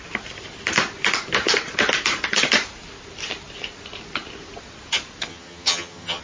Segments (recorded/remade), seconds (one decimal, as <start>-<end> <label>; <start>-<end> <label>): 0.0-5.3 recorded; 5.3-6.2 remade